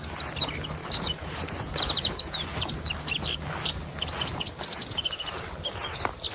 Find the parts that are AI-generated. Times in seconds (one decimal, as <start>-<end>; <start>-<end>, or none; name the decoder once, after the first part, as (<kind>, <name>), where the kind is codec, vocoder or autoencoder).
0.8-1.8 (vocoder, BigVGAN v2)